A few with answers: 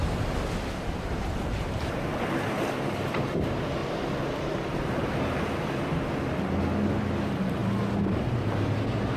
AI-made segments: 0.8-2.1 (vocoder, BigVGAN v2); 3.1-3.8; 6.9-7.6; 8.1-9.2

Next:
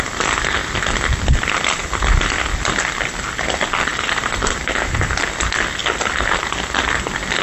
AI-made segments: 3.9-4.7 (vocoder, BigVGAN v2)

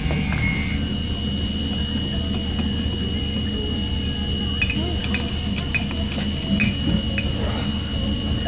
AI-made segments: none